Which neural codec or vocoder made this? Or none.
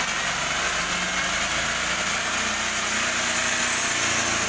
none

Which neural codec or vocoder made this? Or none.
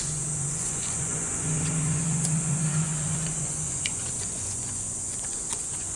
vocoder, Vocos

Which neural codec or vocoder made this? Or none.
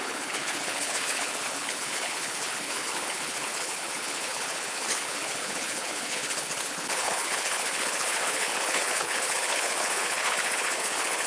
codec, HILCodec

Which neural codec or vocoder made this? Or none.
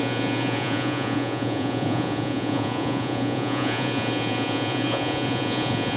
vocoder, Vocos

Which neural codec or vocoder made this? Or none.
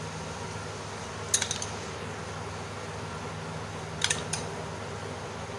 none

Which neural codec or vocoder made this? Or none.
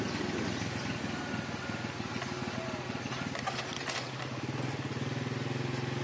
none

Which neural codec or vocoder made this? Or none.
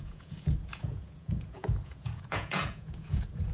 vocoder, Vocos